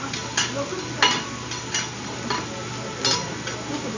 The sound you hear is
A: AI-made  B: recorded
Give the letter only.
B